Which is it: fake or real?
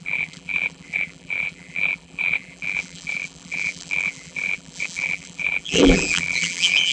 fake